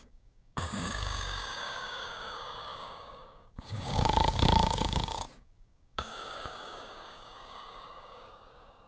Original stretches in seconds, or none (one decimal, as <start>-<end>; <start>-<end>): none